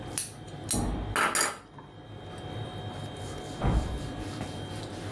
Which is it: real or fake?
real